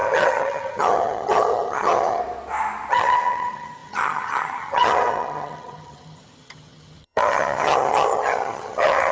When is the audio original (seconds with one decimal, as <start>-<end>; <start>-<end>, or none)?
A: 2.2-2.9